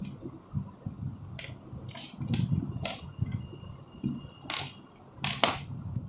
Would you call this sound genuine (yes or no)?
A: yes